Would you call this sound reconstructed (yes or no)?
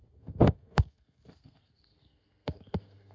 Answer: yes